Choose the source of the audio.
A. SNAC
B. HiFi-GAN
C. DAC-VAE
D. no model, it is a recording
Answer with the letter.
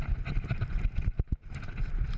D